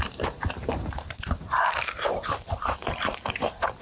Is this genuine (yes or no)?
no